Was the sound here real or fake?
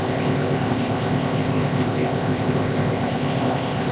fake